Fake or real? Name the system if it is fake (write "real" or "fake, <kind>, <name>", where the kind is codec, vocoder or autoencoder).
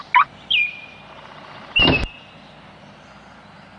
real